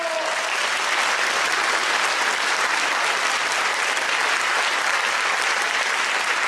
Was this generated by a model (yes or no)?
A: no